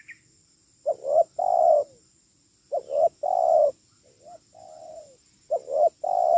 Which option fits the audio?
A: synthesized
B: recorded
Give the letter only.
B